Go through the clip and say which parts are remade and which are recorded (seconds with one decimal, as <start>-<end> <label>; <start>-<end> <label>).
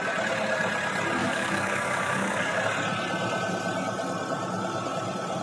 0.0-1.2 recorded; 1.2-2.6 remade; 2.6-5.4 recorded